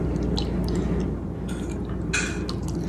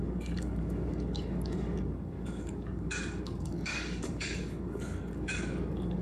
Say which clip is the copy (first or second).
second